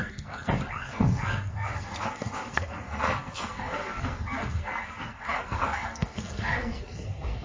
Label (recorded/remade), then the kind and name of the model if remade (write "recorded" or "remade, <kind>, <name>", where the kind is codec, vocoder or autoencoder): remade, codec, SNAC